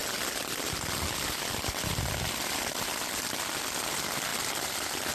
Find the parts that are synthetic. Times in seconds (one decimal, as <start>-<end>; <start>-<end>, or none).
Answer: none